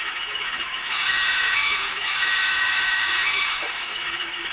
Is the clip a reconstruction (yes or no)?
yes